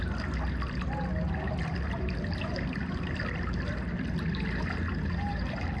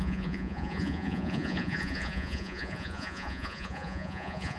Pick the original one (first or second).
first